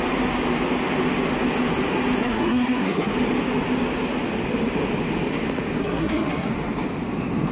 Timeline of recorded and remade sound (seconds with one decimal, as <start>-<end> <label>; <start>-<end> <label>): 0.0-2.2 recorded; 2.2-3.1 remade; 3.1-5.8 recorded; 5.8-6.5 remade; 6.5-7.5 recorded

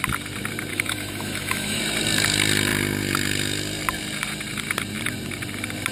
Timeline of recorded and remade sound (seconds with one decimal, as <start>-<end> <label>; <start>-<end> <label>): 0.0-0.7 recorded; 0.7-1.8 remade; 1.8-5.9 recorded

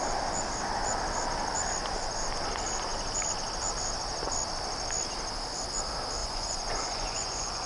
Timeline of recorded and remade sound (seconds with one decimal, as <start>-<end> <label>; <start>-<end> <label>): 0.0-6.2 recorded; 6.2-7.7 remade

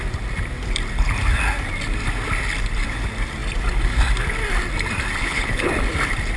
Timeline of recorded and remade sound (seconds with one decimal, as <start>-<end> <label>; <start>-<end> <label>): 0.0-5.2 recorded; 5.2-5.7 remade; 5.7-6.4 recorded

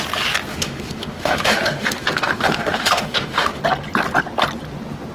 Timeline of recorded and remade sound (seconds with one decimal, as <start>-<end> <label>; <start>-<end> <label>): 0.0-0.5 recorded; 0.5-3.6 remade; 3.6-5.1 recorded